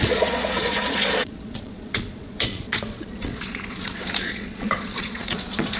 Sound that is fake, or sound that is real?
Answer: fake